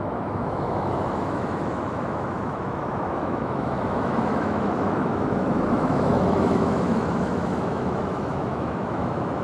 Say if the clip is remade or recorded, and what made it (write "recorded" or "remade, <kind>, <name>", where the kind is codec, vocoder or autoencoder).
remade, autoencoder, DAC-VAE